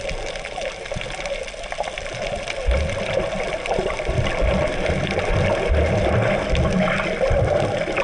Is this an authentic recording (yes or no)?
yes